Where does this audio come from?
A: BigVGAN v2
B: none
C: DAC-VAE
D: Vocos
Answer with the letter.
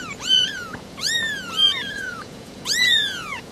D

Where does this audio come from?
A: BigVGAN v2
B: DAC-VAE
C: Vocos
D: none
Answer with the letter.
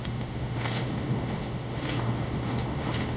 B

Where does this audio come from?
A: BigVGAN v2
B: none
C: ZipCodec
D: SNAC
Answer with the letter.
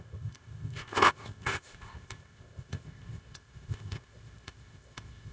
C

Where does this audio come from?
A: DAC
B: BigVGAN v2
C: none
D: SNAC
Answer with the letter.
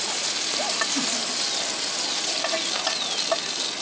C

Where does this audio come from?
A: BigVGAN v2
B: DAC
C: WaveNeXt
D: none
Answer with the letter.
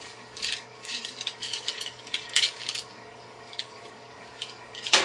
B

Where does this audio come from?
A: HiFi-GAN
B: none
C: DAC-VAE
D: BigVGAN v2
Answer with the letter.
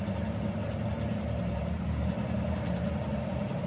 B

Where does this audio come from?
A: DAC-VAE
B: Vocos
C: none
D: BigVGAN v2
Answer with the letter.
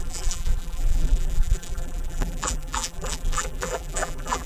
D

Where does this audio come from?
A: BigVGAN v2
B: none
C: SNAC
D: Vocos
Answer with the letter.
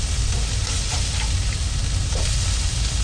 B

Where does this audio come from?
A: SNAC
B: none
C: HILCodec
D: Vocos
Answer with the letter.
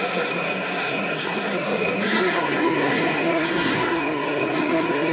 A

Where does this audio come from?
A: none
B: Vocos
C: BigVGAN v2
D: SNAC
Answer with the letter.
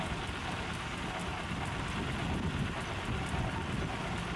A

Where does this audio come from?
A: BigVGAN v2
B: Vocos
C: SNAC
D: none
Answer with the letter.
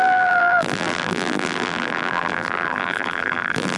A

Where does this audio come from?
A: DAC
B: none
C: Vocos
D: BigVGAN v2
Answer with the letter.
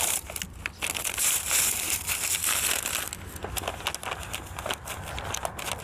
B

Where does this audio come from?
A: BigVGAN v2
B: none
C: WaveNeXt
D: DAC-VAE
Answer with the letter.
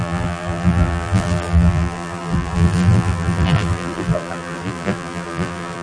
A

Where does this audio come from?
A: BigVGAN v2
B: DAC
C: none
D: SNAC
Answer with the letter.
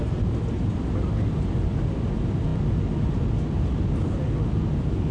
C